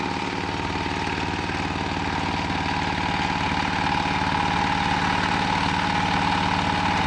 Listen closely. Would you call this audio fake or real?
real